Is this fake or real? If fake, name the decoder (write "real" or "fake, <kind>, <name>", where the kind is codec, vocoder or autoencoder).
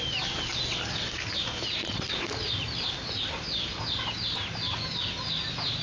real